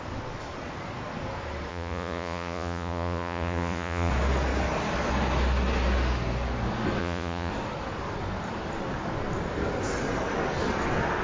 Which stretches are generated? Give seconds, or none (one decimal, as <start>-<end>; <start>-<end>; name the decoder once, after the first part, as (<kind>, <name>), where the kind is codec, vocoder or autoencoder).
1.7-4.1 (vocoder, Vocos); 7.0-7.5